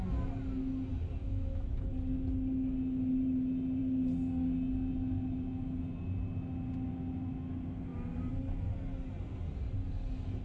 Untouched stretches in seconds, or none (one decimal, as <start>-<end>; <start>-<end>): 0.0-1.2; 1.9-10.4